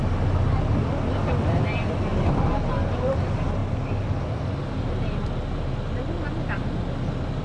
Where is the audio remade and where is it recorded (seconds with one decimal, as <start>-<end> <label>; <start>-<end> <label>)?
0.0-7.4 recorded